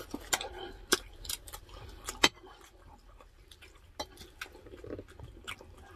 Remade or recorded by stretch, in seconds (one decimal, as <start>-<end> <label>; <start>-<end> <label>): 0.0-0.9 recorded; 0.9-3.6 remade; 3.6-6.0 recorded